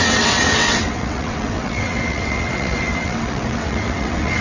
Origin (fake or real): fake